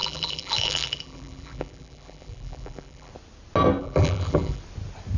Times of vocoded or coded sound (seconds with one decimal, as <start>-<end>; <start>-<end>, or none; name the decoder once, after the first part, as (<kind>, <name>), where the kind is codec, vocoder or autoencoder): 0.0-3.1 (vocoder, BigVGAN v2); 3.8-4.6